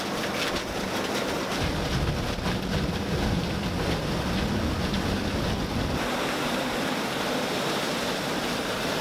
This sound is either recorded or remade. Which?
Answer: recorded